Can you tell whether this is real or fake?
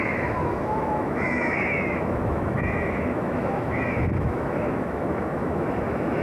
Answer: fake